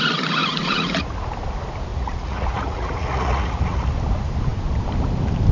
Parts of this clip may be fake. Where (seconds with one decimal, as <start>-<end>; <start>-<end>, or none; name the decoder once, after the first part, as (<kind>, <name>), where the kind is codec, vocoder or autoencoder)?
0.4-1.1 (vocoder, Vocos); 1.9-3.9